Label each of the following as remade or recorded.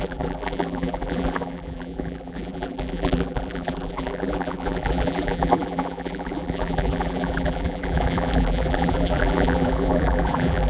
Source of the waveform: remade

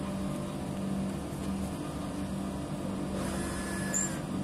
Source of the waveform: recorded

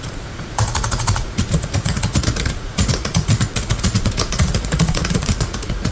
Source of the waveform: remade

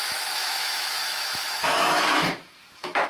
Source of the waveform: remade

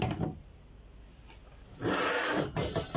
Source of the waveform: recorded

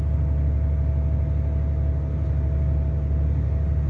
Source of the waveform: recorded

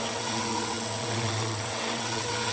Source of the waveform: remade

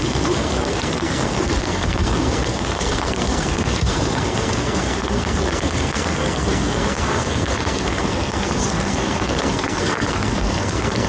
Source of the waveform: remade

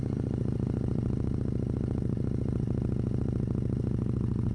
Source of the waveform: recorded